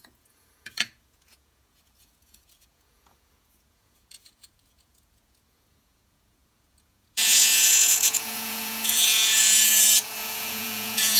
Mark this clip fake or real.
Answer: fake